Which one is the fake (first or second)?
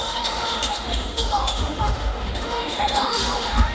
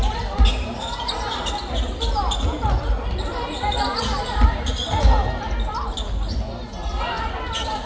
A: first